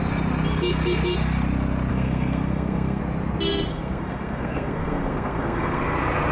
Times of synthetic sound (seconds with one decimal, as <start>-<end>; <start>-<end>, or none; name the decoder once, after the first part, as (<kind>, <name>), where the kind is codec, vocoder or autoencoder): 1.9-3.0 (codec, SNAC); 3.7-5.8